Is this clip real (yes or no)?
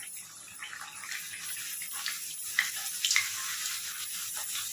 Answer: yes